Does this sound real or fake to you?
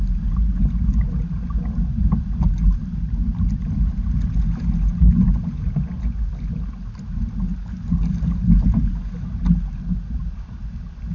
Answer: real